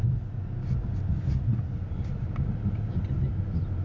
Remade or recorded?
recorded